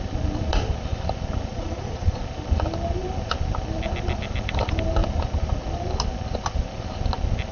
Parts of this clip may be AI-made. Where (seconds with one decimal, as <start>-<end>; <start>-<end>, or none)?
1.5-2.2